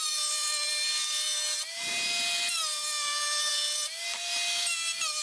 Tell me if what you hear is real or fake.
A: fake